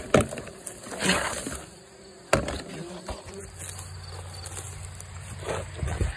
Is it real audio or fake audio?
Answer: real